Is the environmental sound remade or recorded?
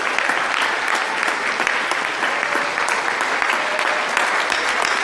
recorded